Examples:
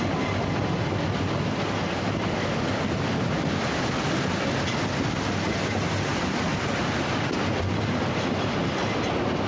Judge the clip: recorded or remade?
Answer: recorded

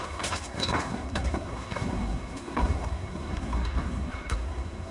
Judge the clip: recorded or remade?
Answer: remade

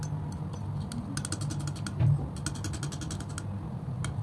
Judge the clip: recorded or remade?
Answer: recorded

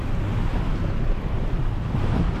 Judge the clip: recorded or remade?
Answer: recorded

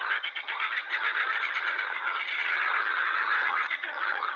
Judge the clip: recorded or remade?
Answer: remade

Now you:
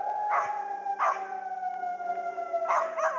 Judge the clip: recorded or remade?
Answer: recorded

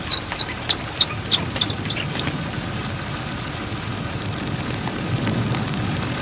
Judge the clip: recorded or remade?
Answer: recorded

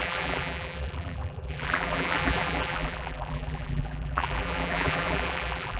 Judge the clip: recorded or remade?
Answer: remade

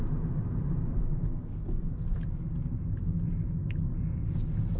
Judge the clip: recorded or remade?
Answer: recorded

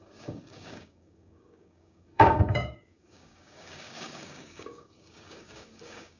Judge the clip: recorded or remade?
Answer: remade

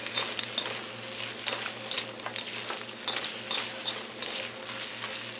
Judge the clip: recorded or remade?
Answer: recorded